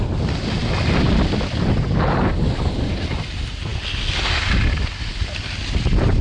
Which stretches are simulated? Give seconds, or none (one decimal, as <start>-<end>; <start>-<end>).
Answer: none